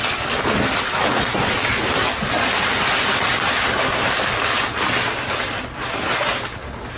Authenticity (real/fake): real